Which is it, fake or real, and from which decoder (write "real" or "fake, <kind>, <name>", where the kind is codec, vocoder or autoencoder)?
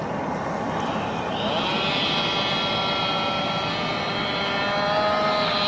real